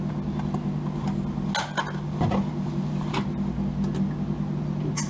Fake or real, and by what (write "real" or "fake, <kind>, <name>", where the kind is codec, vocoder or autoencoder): real